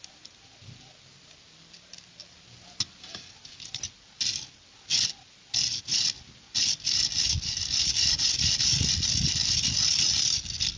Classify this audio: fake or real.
real